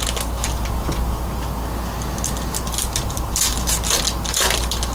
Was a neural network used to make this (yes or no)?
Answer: no